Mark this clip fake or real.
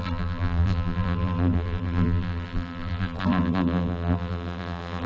fake